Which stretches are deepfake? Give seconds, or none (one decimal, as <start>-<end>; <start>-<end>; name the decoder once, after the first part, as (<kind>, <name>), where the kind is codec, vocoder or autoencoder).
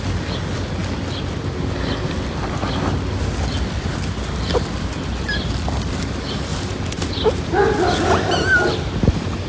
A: none